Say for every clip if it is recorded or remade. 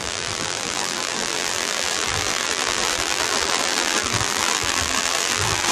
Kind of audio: remade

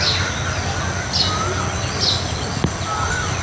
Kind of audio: recorded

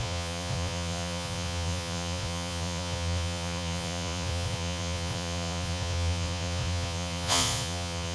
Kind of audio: remade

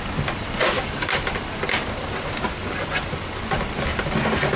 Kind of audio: recorded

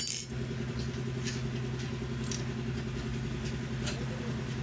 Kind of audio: recorded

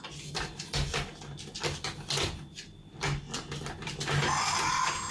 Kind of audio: recorded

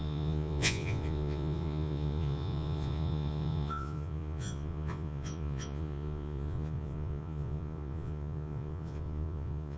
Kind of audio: remade